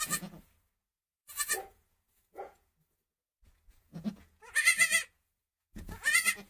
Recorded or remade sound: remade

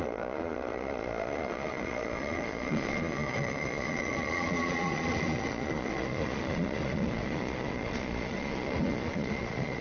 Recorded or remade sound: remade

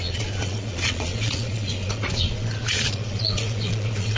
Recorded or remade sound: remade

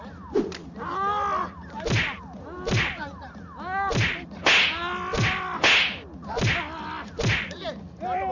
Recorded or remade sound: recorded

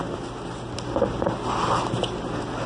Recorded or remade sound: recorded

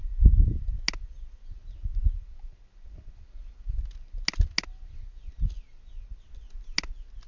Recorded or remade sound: recorded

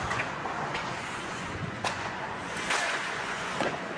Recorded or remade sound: remade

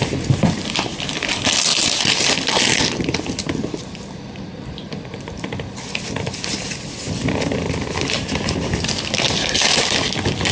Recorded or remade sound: recorded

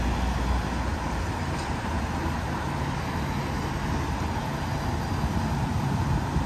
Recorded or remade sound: recorded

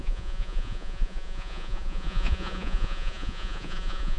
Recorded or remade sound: remade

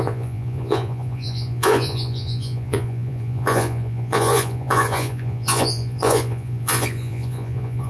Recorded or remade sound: remade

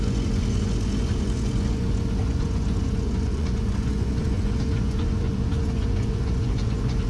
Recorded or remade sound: remade